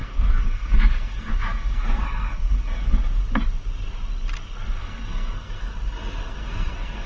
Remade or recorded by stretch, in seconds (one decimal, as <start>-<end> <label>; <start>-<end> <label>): 0.0-2.9 remade; 2.9-4.8 recorded; 4.8-5.7 remade; 5.7-6.2 recorded; 6.2-7.1 remade